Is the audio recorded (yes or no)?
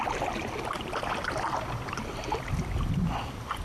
yes